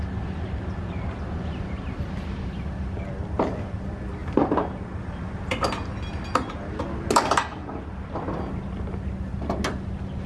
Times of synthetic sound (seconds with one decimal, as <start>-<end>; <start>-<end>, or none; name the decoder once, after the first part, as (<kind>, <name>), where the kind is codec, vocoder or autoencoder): 4.2-6.8 (vocoder, BigVGAN v2)